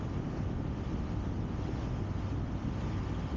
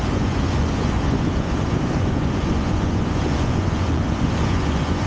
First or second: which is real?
first